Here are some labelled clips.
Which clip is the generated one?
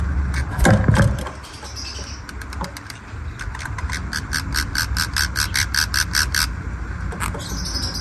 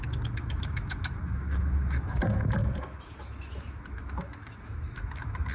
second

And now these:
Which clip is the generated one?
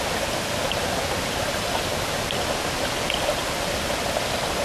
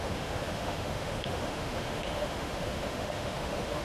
second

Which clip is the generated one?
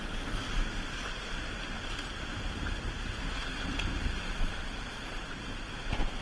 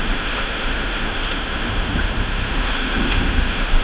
second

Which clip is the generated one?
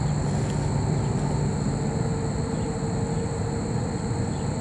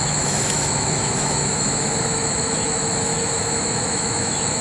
second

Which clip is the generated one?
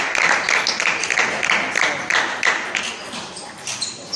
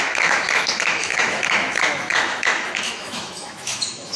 second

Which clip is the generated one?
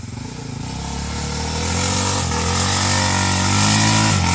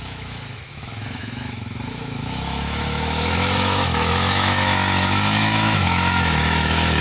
second